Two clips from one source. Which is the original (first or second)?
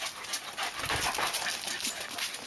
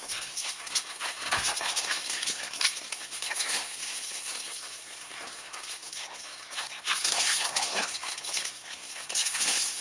first